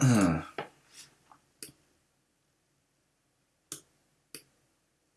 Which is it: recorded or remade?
recorded